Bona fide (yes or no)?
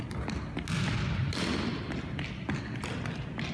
yes